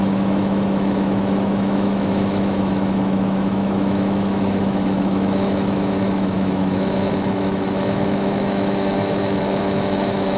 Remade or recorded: remade